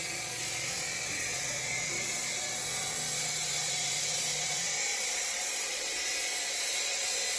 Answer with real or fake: fake